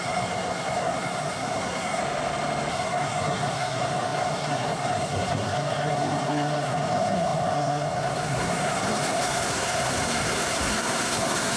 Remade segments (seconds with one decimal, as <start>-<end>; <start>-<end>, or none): 0.0-2.0; 2.7-11.6